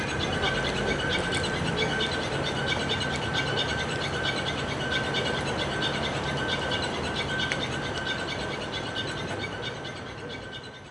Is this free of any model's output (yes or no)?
yes